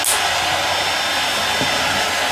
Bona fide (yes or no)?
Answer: yes